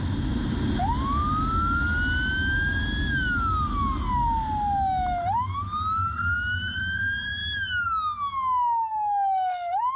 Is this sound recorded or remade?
recorded